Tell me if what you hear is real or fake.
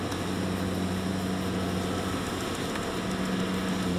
real